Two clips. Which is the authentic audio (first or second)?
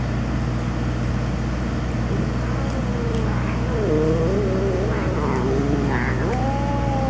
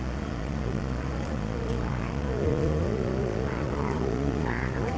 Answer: first